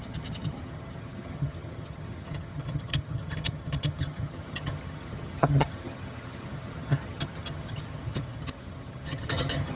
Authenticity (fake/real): fake